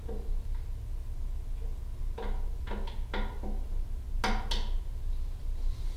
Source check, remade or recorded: recorded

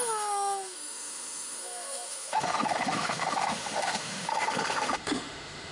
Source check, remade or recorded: remade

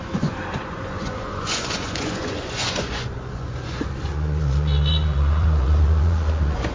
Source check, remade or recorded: remade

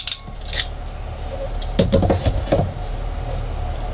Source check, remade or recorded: recorded